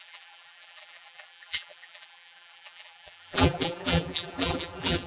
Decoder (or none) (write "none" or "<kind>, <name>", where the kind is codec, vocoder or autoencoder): vocoder, BigVGAN v2